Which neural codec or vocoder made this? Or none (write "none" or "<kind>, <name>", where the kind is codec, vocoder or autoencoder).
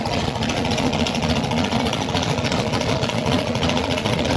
vocoder, Vocos